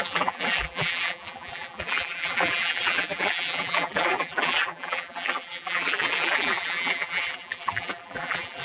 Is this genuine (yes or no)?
no